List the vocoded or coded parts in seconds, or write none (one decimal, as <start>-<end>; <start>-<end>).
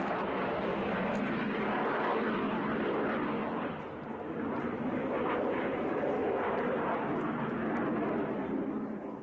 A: 3.4-6.9